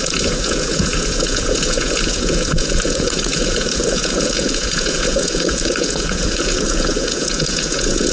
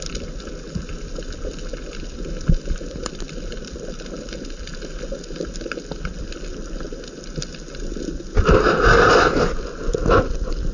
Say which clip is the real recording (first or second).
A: second